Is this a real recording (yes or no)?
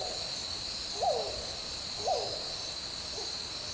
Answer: yes